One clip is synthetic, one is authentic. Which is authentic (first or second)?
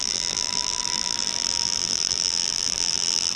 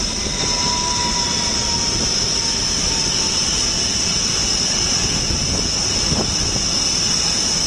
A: second